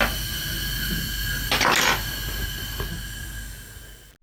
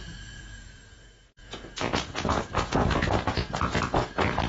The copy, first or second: second